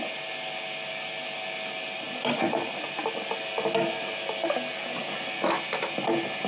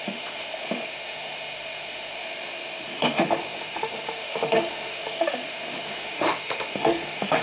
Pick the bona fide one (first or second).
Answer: first